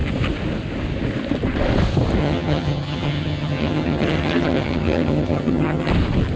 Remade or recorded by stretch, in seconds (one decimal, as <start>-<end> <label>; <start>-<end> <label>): 0.0-2.2 recorded; 2.2-5.9 remade; 5.9-6.4 recorded